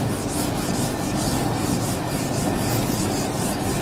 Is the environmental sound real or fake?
real